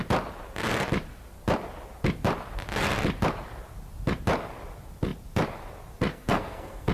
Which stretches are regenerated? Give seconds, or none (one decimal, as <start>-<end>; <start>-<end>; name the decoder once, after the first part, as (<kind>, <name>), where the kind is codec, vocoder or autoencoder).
6.1-6.9 (codec, SNAC)